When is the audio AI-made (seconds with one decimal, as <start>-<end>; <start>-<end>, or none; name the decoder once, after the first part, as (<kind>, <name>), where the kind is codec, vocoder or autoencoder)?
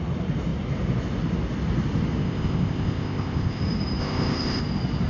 2.2-3.6 (codec, ZipCodec); 4.0-4.6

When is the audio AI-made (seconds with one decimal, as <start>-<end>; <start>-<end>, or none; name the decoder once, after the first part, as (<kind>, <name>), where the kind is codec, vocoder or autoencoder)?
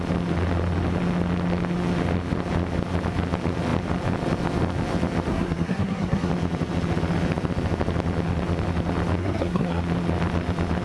5.3-6.3 (codec, SNAC); 9.2-9.8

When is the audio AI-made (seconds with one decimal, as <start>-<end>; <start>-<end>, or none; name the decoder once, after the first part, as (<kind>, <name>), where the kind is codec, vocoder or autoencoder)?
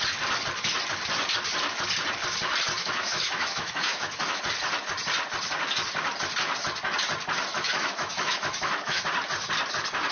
2.8-4.4 (autoencoder, DAC-VAE); 7.5-9.0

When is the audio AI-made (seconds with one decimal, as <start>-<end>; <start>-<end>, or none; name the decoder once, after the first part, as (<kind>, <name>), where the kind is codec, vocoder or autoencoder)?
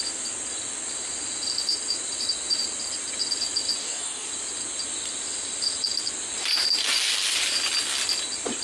3.8-4.3 (codec, DAC)